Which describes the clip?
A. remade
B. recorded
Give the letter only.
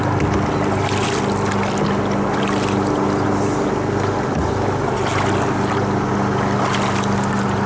B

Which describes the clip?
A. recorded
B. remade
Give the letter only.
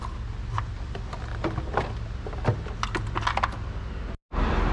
A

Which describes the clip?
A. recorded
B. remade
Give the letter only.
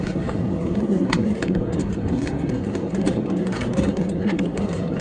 B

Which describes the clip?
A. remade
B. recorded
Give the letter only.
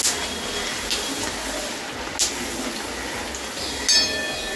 B